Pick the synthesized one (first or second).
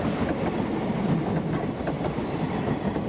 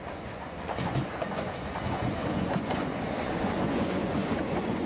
second